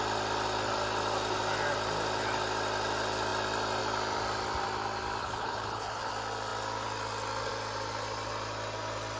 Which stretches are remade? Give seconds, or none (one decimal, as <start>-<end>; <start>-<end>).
5.2-6.1